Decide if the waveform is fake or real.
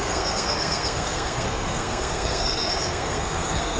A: fake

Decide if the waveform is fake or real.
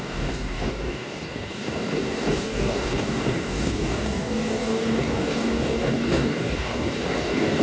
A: fake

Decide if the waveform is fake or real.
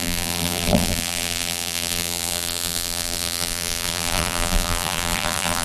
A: fake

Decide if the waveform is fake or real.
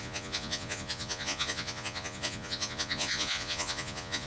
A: fake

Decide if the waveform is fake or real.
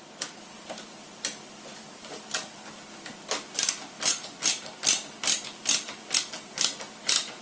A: real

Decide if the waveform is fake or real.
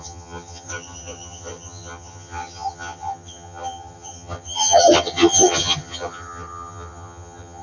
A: fake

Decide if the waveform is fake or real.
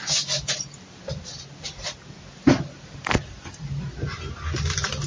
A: real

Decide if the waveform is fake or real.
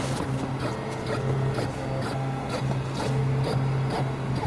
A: real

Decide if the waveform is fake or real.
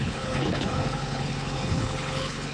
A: fake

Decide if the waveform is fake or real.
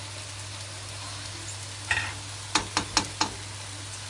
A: real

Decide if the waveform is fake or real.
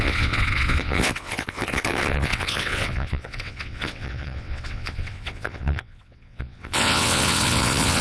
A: fake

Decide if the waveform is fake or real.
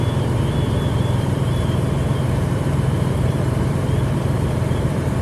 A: fake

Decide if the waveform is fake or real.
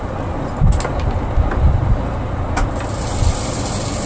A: real